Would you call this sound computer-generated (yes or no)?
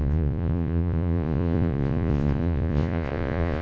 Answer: yes